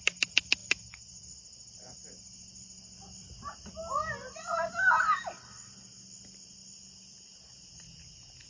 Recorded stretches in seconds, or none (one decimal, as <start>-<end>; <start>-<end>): 0.0-8.5